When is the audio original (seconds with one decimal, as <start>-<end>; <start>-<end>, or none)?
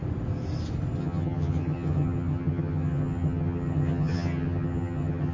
0.0-1.0